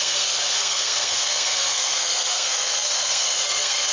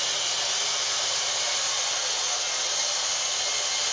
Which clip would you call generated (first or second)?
first